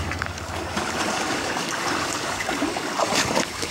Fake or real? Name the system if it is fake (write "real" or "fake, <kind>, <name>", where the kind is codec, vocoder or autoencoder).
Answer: fake, codec, DAC